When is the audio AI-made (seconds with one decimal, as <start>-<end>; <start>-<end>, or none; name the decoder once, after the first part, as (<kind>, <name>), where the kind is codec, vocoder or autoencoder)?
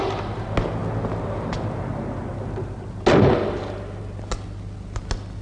none